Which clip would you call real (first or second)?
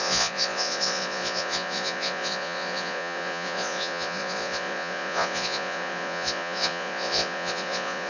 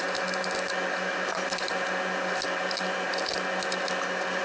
second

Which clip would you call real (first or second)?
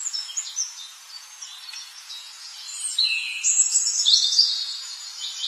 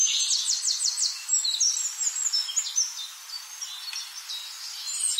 second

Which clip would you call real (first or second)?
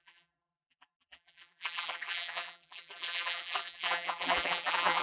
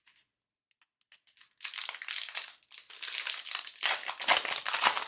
second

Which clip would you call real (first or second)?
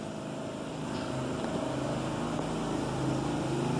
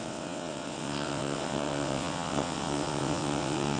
first